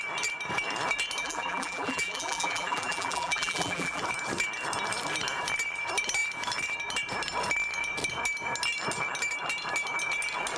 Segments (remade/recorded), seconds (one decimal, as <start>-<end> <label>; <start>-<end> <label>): 0.0-1.2 recorded; 1.2-4.0 remade; 4.0-10.6 recorded